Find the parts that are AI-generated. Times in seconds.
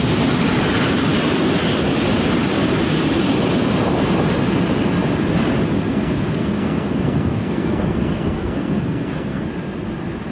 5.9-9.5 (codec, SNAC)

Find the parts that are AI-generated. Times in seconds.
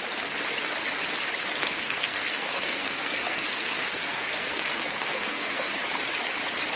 1.6-5.7 (codec, SNAC)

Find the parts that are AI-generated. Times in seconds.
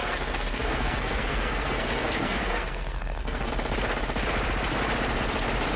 0.0-3.5 (codec, SNAC)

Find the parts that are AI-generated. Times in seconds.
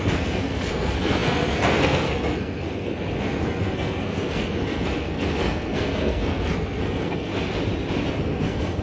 0.0-7.3 (codec, SNAC); 8.1-8.8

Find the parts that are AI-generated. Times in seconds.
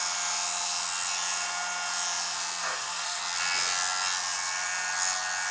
2.6-3.2 (codec, SNAC)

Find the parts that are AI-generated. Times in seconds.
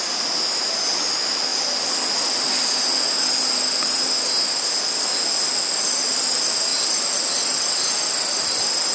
none